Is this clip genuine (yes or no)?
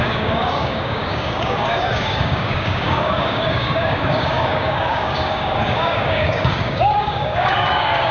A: no